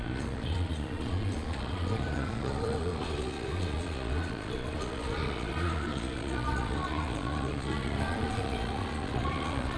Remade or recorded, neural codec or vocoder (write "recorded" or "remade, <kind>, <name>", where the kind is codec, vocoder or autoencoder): remade, vocoder, Vocos